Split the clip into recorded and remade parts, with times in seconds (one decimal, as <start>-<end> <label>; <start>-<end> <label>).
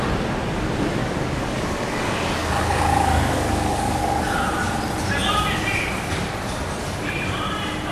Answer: 0.0-1.0 recorded; 1.0-4.2 remade; 4.2-7.9 recorded